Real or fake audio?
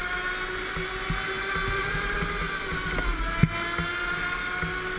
real